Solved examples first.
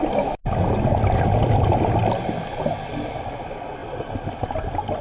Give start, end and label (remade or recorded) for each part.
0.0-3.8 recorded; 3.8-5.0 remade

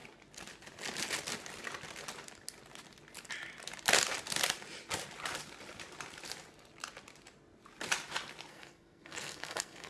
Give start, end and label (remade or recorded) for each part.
0.0-8.5 recorded; 8.5-9.9 remade

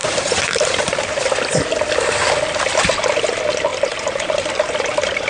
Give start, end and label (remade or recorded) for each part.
0.0-1.0 remade; 1.0-3.7 recorded; 3.7-4.3 remade; 4.3-5.3 recorded